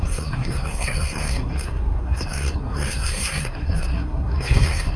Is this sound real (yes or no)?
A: no